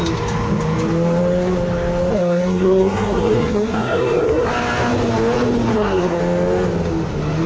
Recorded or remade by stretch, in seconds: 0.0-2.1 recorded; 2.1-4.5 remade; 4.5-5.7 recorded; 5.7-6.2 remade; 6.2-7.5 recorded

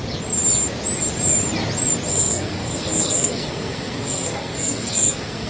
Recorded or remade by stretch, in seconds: 0.0-2.1 recorded; 2.1-5.5 remade

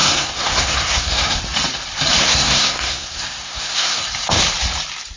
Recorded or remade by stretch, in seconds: 0.0-1.4 remade; 1.4-2.2 recorded; 2.2-4.0 remade; 4.0-5.2 recorded